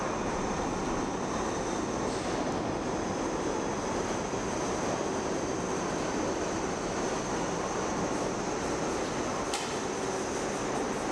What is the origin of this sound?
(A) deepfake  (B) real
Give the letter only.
B